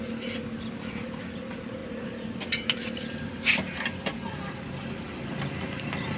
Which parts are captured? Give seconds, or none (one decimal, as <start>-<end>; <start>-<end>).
0.0-6.2